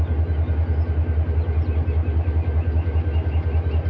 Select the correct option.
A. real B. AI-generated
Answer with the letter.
A